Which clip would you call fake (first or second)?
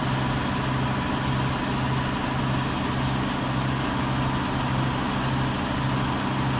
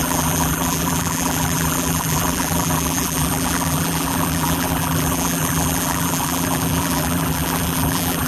second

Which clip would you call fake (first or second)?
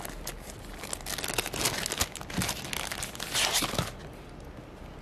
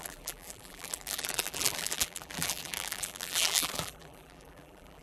second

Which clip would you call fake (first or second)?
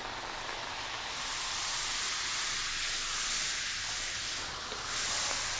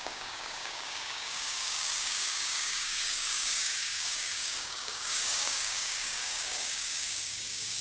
second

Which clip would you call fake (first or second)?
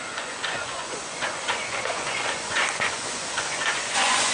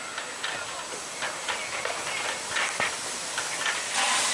first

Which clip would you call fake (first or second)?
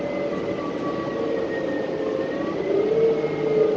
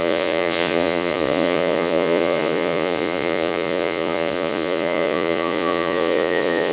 second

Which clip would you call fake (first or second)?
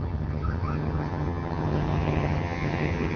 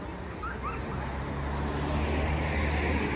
first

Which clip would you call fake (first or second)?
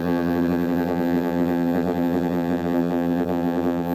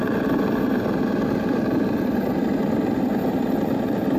first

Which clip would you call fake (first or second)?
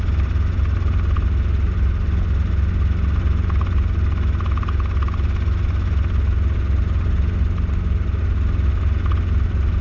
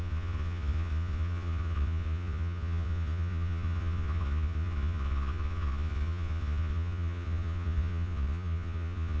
second